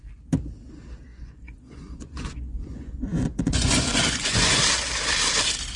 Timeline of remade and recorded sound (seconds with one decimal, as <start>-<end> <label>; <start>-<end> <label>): 0.0-1.1 recorded; 1.1-4.6 remade; 4.6-5.8 recorded